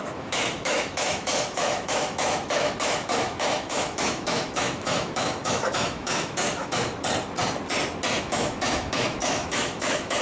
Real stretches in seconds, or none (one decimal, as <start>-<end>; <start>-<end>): 6.9-8.2